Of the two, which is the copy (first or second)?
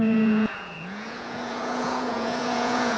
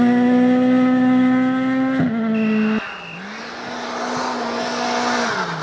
first